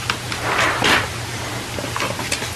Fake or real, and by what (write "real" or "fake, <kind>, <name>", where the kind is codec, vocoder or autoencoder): real